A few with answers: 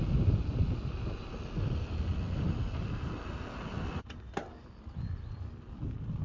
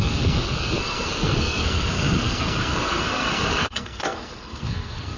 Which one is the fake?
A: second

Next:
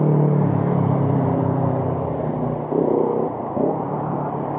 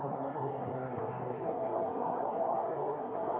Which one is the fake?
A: second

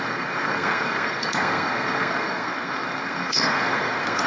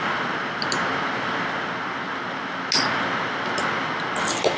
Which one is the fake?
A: first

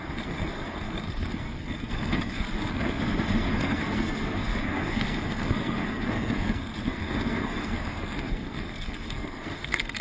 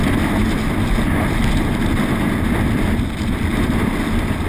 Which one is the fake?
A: first